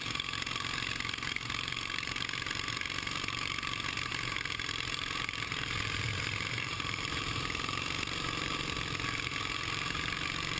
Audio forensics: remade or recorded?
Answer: remade